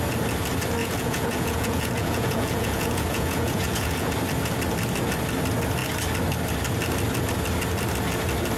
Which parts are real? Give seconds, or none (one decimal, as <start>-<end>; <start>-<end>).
0.0-0.8; 4.1-8.6